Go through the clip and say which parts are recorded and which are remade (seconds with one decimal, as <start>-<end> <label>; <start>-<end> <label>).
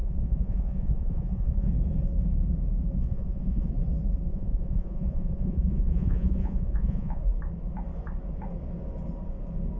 0.0-1.7 remade; 1.7-3.1 recorded; 3.1-3.7 remade; 3.7-4.3 recorded; 4.3-7.2 remade; 7.2-9.8 recorded